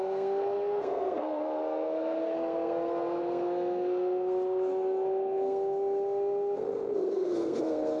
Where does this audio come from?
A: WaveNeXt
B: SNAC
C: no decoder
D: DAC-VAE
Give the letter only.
B